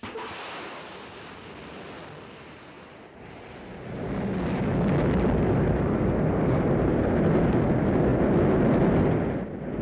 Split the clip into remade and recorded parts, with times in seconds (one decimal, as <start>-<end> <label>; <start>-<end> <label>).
0.0-9.8 recorded